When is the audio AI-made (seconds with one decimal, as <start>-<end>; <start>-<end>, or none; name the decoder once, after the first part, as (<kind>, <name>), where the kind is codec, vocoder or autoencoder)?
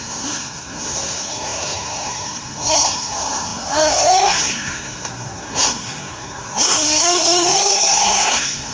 0.0-8.7 (codec, SNAC)